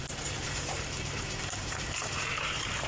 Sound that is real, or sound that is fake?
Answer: fake